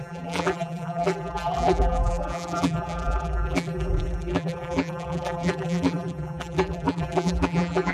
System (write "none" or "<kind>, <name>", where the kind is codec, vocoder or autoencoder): vocoder, BigVGAN v2